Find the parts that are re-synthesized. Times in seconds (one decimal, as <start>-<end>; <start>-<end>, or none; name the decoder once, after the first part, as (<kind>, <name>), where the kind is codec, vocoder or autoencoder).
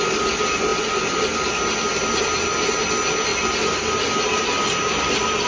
none